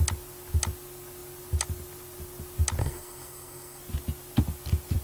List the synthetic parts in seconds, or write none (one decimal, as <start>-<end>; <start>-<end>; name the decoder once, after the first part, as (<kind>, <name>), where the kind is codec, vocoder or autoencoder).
2.8-3.8 (codec, SNAC)